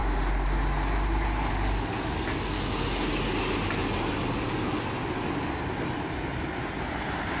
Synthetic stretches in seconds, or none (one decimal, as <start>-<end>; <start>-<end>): none